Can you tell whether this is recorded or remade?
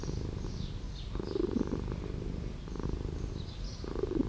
recorded